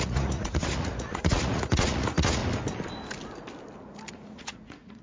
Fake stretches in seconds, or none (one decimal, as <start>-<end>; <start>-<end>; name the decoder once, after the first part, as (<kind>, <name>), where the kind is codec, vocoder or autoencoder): 0.0-2.4 (vocoder, Vocos); 4.1-5.0